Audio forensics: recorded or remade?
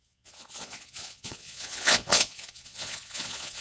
remade